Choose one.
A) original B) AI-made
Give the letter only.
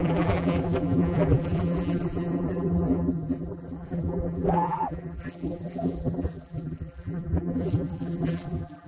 B